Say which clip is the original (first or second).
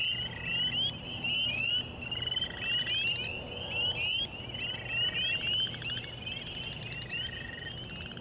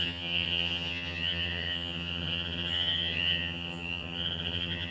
first